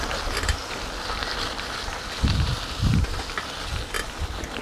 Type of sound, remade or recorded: recorded